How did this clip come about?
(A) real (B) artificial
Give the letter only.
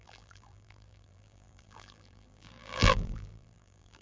B